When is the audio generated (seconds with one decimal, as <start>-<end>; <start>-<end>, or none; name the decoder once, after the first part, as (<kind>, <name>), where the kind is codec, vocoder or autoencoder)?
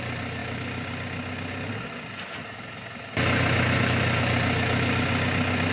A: none